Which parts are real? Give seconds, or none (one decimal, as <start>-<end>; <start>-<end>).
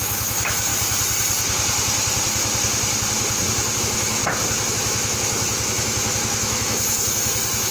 0.7-3.8; 4.2-4.7